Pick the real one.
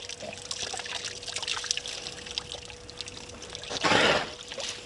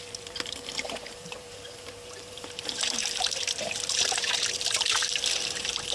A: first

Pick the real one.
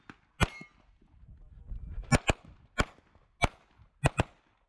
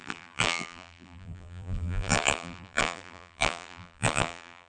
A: first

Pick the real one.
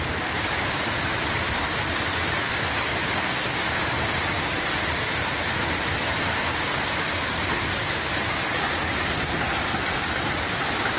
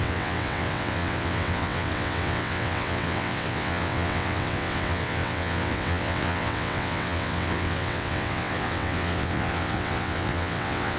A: first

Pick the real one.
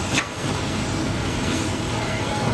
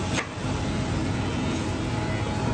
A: second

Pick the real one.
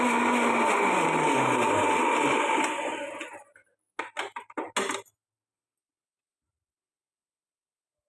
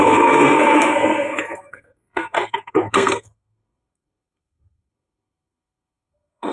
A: first